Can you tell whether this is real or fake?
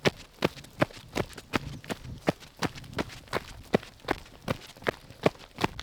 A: real